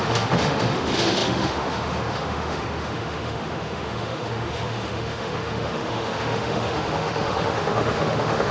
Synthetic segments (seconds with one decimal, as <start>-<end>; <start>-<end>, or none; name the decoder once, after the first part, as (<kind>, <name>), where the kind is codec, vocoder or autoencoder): 0.0-8.5 (autoencoder, DAC-VAE)